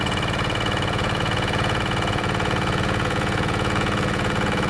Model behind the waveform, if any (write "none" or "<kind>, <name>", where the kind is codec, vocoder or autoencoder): vocoder, Vocos